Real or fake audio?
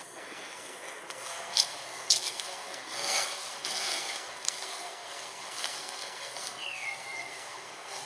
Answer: fake